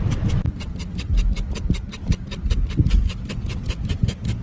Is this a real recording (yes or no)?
yes